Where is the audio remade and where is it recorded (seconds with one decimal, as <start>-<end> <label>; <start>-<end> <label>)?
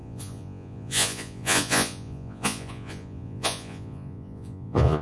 0.0-5.0 remade